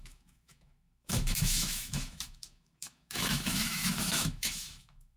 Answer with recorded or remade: remade